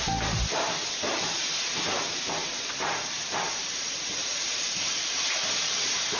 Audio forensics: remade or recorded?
remade